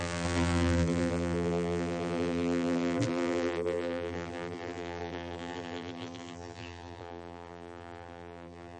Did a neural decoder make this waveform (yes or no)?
yes